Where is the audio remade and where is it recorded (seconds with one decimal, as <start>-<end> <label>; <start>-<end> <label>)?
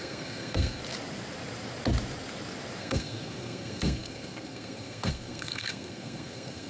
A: 0.0-0.8 remade; 0.8-2.8 recorded; 2.8-6.7 remade